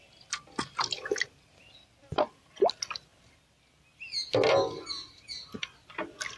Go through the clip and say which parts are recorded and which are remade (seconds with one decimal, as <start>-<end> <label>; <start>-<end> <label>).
0.0-6.4 recorded